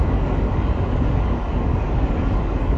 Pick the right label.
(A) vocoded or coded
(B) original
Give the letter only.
A